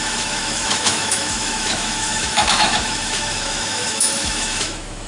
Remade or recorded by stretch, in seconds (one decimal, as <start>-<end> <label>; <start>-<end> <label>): 0.0-5.1 remade